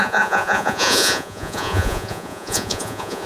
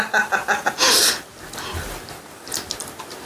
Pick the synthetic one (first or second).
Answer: first